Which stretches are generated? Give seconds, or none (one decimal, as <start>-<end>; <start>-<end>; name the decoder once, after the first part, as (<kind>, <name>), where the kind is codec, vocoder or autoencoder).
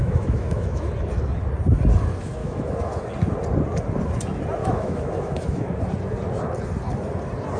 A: 0.0-0.9 (autoencoder, DAC-VAE); 2.4-2.9; 4.6-5.8